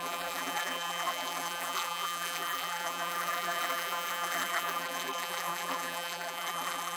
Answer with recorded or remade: remade